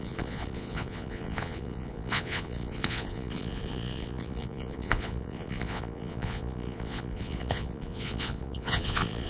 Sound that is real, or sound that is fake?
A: fake